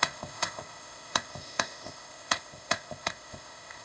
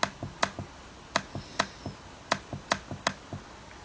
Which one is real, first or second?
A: second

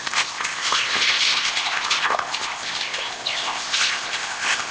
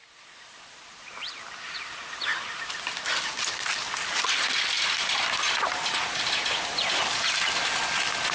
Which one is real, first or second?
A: second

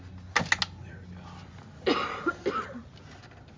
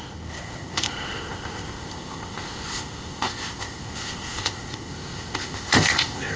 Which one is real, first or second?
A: first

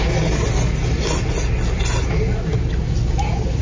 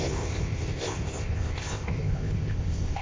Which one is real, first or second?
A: first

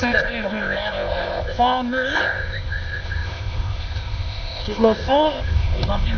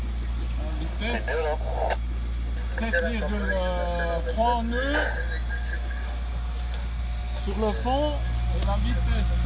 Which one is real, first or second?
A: second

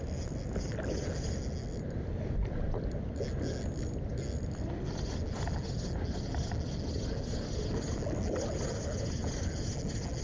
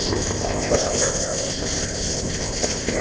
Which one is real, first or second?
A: first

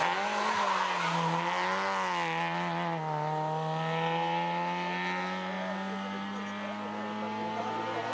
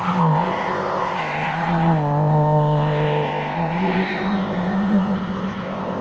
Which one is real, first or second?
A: first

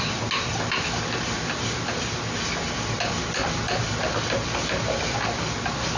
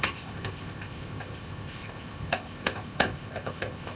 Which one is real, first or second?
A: first